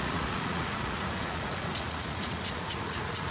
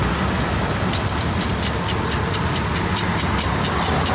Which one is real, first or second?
second